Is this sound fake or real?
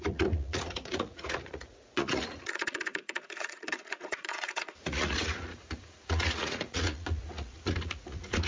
fake